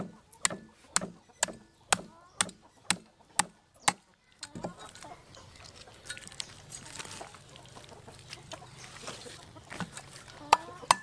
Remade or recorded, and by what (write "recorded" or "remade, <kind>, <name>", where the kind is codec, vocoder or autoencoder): recorded